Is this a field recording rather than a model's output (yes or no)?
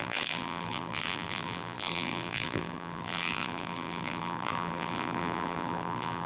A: no